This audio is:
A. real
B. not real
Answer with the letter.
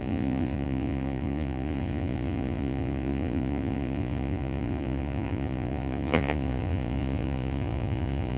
B